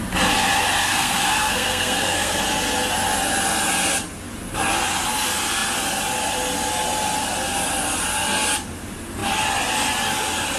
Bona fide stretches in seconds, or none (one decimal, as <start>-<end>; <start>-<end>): 0.0-0.8; 2.4-10.6

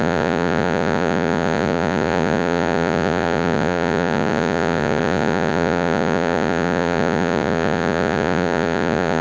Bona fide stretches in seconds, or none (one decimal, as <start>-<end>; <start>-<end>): none

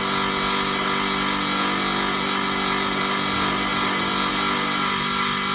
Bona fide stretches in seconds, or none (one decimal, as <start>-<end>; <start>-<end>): 0.0-5.5

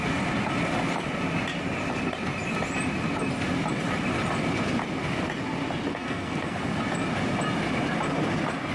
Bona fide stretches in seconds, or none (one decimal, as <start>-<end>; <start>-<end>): 0.0-5.9; 6.6-8.7

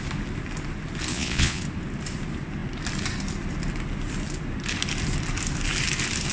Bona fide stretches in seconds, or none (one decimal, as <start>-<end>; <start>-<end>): 0.0-1.1; 1.6-6.3